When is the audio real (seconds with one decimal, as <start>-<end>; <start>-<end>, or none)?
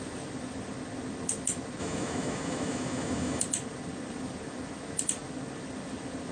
0.0-1.8; 3.4-6.3